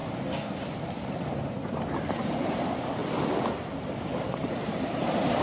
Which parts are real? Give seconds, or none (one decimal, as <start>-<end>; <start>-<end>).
0.0-0.8; 3.0-4.0

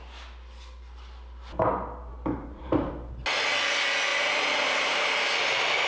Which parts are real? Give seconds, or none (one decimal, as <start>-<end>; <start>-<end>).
0.0-2.1; 2.9-4.1; 5.1-5.9

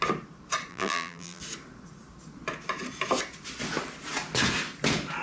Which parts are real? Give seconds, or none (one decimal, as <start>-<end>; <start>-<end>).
0.0-0.7; 1.4-5.2

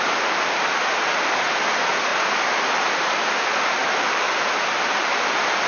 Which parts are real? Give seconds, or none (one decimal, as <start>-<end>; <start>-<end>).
0.0-3.8; 4.3-5.7

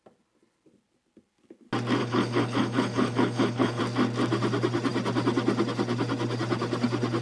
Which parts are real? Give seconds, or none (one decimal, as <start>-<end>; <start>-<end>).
0.0-2.0; 3.8-7.2

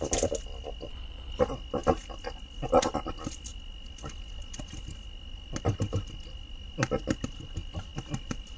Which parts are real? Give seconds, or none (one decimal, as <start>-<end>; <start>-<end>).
0.0-0.9; 1.4-8.6